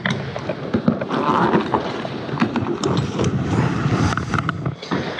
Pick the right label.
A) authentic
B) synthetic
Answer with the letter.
A